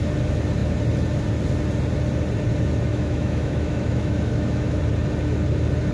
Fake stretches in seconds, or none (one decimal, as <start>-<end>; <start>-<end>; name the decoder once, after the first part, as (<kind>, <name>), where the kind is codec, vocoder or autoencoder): 2.9-4.8 (autoencoder, DAC-VAE)